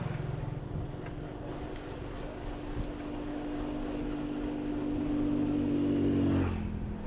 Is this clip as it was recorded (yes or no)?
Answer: yes